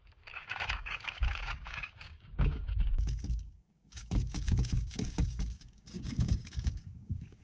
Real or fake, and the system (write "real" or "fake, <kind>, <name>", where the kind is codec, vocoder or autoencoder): fake, codec, DAC